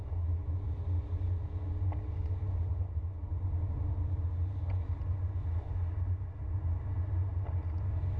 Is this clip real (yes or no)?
yes